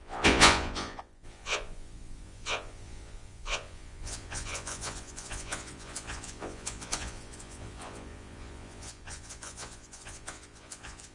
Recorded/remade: remade